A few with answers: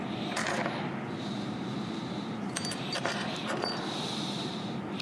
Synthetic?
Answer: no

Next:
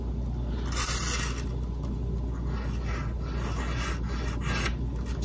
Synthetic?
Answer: no